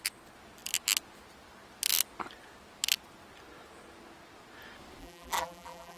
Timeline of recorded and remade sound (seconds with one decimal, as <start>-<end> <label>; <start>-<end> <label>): 0.0-5.0 recorded; 5.0-6.0 remade